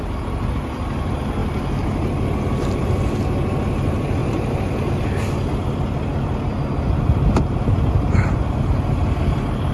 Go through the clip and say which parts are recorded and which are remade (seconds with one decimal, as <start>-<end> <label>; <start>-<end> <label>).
0.0-4.2 recorded; 4.2-4.9 remade; 4.9-9.7 recorded

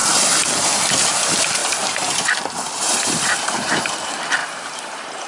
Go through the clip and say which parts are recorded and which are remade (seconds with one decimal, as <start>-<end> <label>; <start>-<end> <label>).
0.0-1.6 recorded; 1.6-3.9 remade; 3.9-4.4 recorded; 4.4-5.3 remade

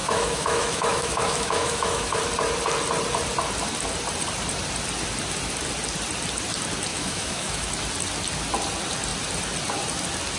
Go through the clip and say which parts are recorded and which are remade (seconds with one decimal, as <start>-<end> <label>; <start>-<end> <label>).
0.0-2.2 remade; 2.2-6.9 recorded; 6.9-7.7 remade; 7.7-10.4 recorded

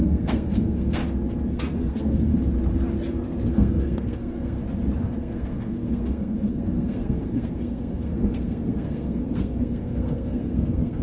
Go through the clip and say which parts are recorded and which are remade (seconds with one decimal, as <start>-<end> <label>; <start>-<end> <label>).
0.0-1.0 remade; 1.0-1.5 recorded; 1.5-2.3 remade; 2.3-3.5 recorded; 3.5-4.6 remade; 4.6-5.2 recorded; 5.2-11.0 remade

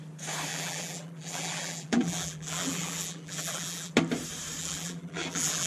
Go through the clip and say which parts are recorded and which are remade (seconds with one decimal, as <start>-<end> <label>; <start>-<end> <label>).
0.0-0.5 recorded; 0.5-3.9 remade; 3.9-4.6 recorded; 4.6-5.7 remade

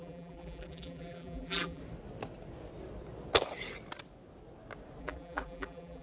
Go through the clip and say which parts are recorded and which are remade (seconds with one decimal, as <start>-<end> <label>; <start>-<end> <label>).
0.0-1.8 remade; 1.8-5.0 recorded; 5.0-6.0 remade